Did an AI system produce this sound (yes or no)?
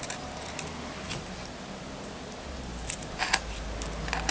no